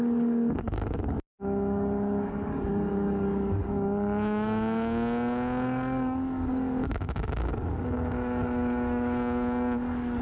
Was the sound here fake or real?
fake